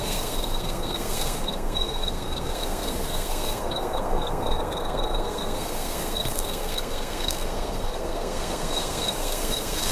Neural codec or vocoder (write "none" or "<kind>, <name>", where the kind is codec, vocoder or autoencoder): codec, SNAC